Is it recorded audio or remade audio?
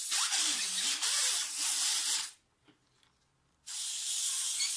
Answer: recorded